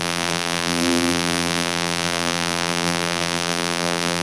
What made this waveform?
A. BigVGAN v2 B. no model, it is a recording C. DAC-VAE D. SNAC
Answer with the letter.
A